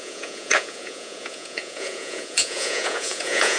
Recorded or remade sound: remade